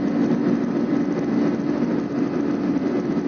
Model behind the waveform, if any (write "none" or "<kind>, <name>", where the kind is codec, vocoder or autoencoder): none